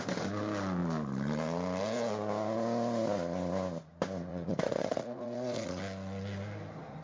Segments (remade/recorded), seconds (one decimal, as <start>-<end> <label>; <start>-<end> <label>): 0.0-4.3 recorded; 4.3-5.8 remade; 5.8-7.0 recorded